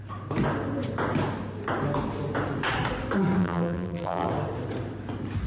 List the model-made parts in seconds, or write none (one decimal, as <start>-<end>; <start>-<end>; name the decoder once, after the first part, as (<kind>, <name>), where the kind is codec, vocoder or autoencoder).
3.4-4.3 (vocoder, BigVGAN v2)